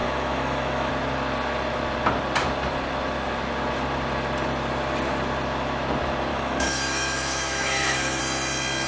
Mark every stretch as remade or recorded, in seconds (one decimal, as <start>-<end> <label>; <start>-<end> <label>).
0.0-0.9 remade; 0.9-6.3 recorded; 6.3-8.2 remade; 8.2-8.9 recorded